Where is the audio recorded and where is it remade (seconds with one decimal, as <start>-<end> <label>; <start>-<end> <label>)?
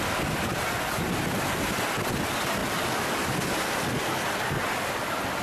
0.0-5.4 recorded